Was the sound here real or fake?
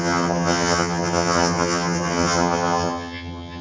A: fake